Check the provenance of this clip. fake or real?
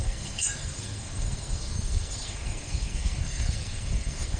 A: fake